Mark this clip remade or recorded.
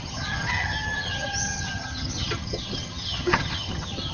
remade